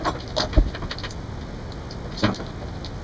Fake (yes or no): no